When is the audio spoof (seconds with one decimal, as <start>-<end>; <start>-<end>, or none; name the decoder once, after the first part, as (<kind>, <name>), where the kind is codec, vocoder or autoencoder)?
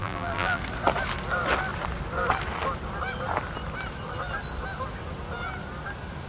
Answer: 0.0-0.6 (vocoder, BigVGAN v2)